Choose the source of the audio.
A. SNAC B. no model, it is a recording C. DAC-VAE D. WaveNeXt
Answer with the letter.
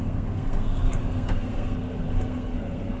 A